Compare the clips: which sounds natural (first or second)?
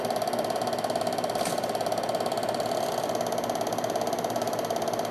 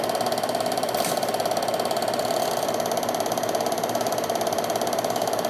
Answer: first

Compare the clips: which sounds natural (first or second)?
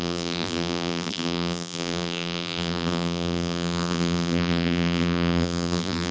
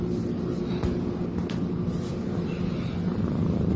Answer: second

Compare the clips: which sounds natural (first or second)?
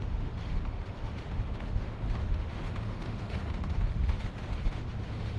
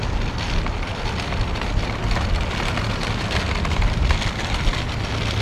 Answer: second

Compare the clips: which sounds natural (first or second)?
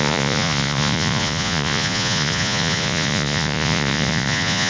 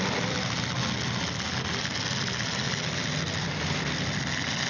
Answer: second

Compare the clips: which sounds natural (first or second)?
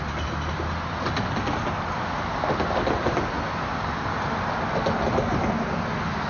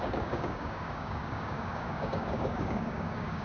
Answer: first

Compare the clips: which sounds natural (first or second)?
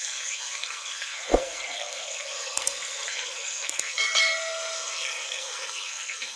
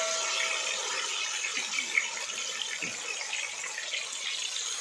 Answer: second